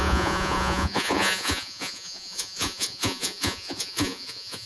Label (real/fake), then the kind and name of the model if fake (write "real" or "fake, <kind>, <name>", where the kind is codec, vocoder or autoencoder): fake, vocoder, Vocos